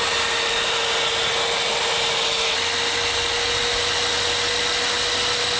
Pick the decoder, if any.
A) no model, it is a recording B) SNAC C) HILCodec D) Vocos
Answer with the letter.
A